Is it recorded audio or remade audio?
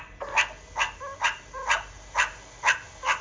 recorded